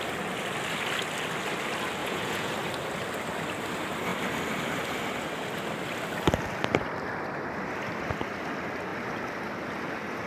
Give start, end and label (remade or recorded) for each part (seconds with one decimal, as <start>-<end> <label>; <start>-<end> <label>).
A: 0.0-2.0 recorded; 2.0-2.5 remade; 2.5-10.3 recorded